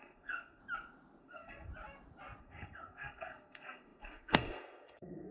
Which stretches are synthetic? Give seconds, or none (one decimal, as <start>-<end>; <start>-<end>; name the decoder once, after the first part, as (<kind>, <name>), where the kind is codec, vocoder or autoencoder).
0.0-0.6 (codec, SNAC); 1.2-1.7; 2.4-5.3